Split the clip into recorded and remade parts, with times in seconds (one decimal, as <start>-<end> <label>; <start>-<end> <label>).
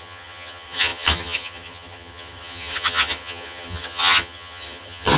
0.0-5.2 remade